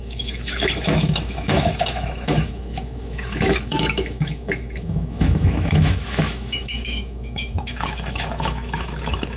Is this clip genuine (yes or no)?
no